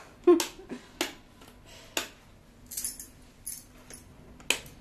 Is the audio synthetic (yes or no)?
no